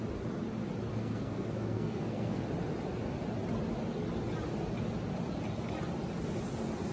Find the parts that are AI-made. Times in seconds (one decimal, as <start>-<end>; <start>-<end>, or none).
0.9-2.4